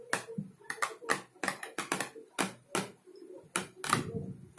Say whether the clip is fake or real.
real